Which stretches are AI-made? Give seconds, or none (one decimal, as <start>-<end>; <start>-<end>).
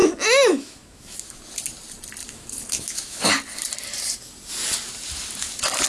0.0-1.4; 2.2-3.3